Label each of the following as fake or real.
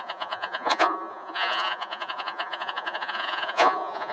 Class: fake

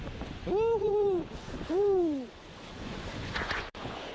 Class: fake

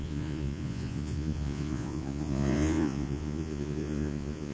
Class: fake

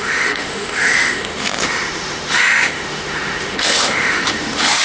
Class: fake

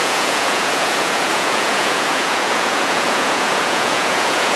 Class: fake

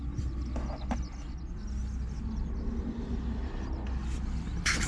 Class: real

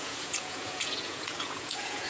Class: fake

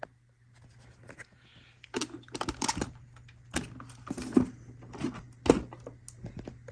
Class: real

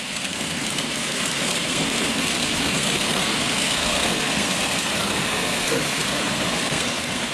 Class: fake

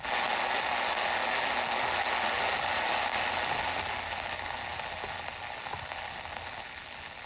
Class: real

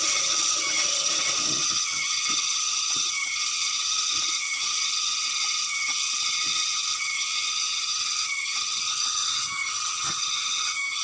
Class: fake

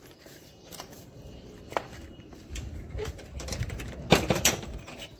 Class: fake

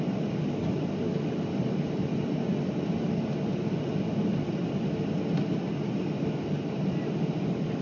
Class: real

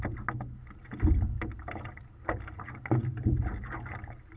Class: real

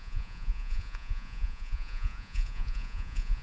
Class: fake